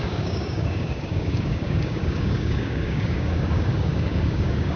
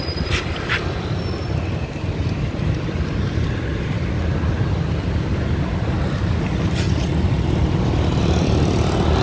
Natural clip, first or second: second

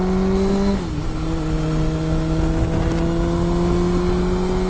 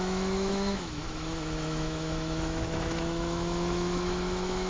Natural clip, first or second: first